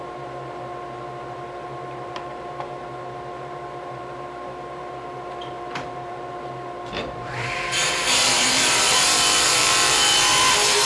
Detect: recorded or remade remade